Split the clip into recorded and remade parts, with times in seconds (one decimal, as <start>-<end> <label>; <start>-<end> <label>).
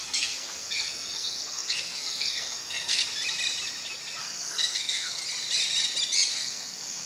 0.0-3.0 remade; 3.0-4.2 recorded; 4.2-5.2 remade; 5.2-6.3 recorded; 6.3-7.1 remade